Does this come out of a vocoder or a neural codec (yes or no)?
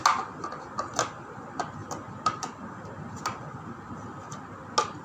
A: no